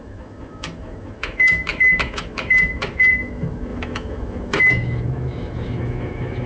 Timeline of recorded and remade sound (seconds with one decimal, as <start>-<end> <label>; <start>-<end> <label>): 0.0-6.5 remade